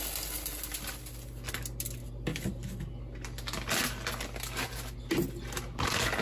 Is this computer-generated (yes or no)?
no